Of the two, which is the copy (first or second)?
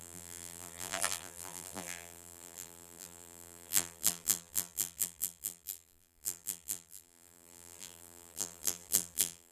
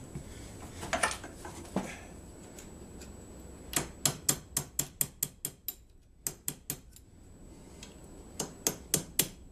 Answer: first